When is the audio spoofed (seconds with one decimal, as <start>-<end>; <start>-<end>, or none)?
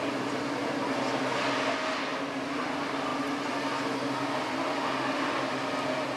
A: none